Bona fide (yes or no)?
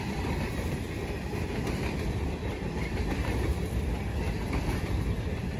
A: no